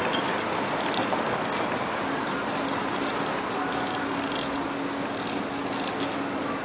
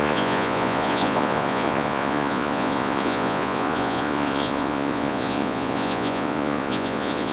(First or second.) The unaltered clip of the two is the first